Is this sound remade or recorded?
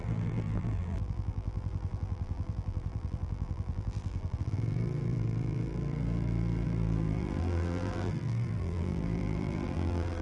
remade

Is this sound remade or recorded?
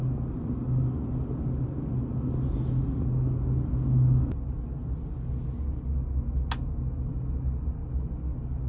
recorded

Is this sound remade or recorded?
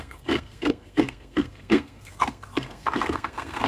remade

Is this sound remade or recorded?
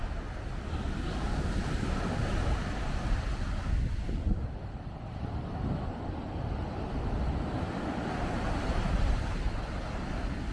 recorded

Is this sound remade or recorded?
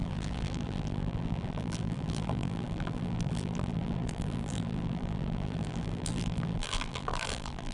remade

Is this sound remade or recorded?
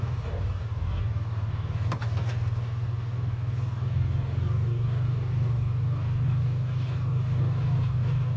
remade